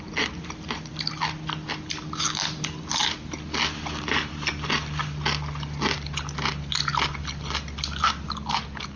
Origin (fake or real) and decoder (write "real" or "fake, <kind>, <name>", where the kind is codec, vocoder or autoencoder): real